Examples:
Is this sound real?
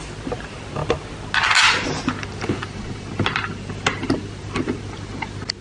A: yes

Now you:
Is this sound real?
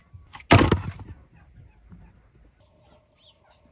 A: yes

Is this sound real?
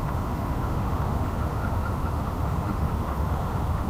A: no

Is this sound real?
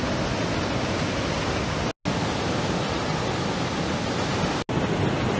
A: yes